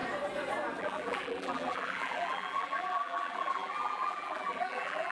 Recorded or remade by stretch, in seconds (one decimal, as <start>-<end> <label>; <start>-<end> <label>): 0.0-0.8 recorded; 0.8-5.1 remade